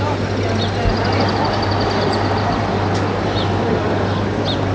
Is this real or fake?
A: real